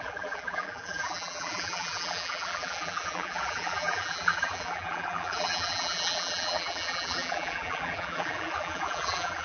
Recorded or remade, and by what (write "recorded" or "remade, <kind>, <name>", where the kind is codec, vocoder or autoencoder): remade, vocoder, BigVGAN v2